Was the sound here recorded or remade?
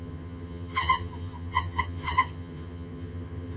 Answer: remade